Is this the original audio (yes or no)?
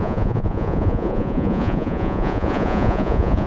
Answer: no